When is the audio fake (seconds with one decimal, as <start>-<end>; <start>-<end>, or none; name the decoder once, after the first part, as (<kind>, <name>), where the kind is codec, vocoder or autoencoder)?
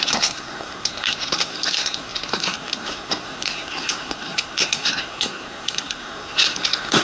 0.0-7.0 (codec, SNAC)